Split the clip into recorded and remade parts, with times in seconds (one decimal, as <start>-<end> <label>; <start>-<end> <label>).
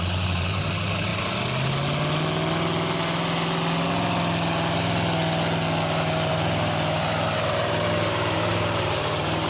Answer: 0.0-1.1 remade; 1.1-6.3 recorded; 6.3-9.5 remade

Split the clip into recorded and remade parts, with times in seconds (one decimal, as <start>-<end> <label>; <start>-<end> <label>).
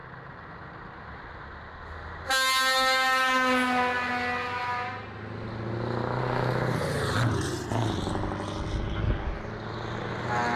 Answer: 0.0-10.6 recorded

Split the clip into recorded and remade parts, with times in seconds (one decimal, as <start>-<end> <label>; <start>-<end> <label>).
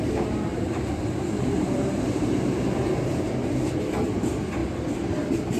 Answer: 0.0-0.5 recorded; 0.5-3.4 remade; 3.4-5.6 recorded